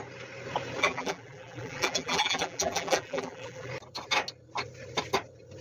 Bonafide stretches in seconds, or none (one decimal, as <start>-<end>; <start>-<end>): 0.0-0.8; 3.7-5.6